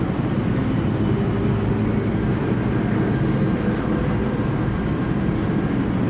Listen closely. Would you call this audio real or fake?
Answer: real